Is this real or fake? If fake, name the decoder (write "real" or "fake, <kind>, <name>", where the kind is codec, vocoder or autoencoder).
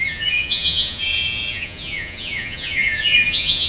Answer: fake, vocoder, Vocos